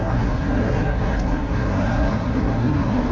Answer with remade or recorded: remade